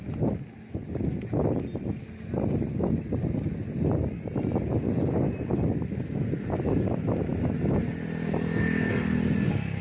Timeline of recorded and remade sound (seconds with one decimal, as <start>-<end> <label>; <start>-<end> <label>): 0.0-9.8 recorded